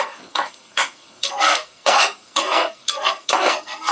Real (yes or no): no